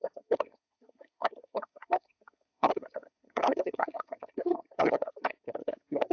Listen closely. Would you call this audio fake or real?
fake